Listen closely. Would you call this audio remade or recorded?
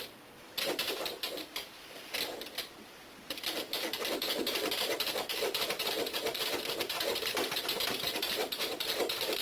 remade